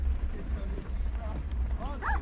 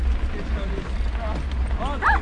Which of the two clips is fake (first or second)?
first